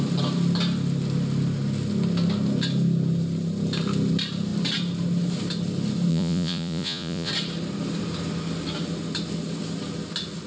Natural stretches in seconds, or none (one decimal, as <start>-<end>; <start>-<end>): 0.0-6.1; 7.3-10.5